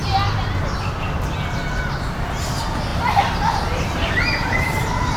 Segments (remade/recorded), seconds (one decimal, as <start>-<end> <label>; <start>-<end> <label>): 0.0-2.9 recorded; 2.9-5.2 remade